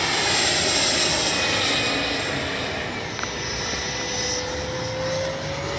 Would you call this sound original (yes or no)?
yes